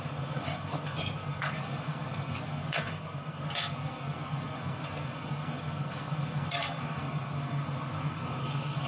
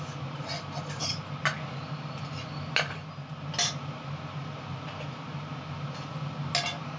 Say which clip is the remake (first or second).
first